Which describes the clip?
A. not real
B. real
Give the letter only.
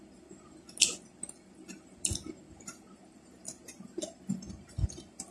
B